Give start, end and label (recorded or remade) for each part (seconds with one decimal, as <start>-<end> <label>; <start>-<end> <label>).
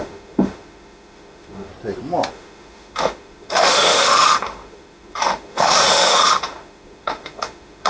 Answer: 0.0-1.7 remade; 1.7-2.3 recorded; 2.3-7.9 remade